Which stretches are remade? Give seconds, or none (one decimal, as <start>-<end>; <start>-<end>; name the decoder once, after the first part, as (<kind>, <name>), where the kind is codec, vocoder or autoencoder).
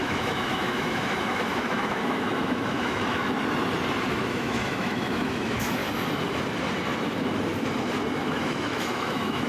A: 0.0-3.2 (autoencoder, DAC-VAE); 4.1-5.8; 8.2-9.5